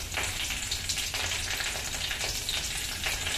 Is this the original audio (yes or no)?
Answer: yes